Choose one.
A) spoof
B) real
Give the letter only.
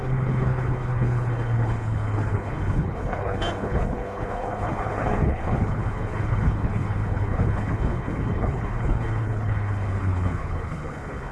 A